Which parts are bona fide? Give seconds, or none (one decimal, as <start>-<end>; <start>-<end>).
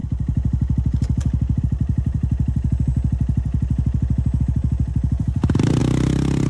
2.9-4.4; 5.8-6.5